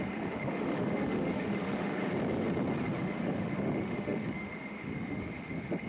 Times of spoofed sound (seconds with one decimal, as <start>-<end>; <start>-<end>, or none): 0.0-2.0; 3.0-5.9